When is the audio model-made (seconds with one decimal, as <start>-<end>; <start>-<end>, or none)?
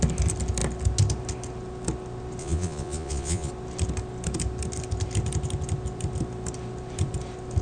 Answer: 2.4-3.5